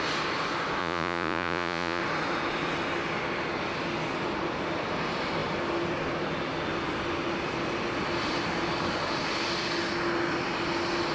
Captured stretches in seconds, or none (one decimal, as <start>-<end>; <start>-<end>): 0.0-0.8; 2.0-11.1